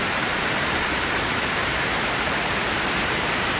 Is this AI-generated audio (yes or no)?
yes